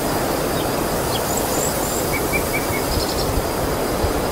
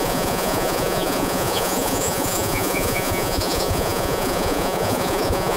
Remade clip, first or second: second